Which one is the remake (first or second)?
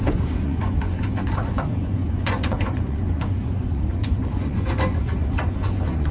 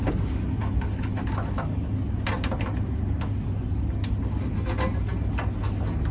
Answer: first